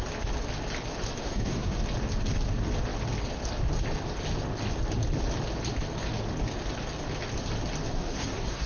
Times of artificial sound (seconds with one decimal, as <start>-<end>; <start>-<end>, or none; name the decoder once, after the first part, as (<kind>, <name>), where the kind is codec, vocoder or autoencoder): 1.2-1.8 (codec, SNAC); 7.9-8.7